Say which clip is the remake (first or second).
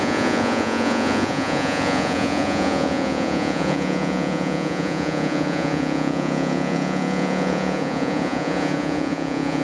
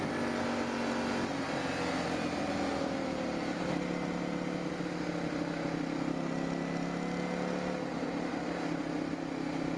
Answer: first